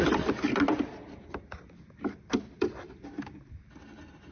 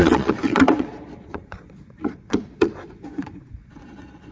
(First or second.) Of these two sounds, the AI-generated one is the second